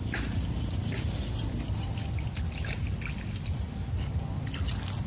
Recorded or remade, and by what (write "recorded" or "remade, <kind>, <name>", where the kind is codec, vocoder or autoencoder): recorded